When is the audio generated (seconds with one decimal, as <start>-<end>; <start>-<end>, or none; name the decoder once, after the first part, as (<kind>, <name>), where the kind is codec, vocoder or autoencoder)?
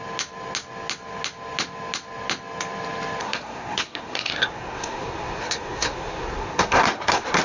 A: 3.2-7.4 (codec, SNAC)